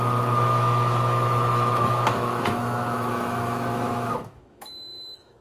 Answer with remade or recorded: remade